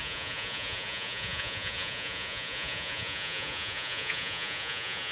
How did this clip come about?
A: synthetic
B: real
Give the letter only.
A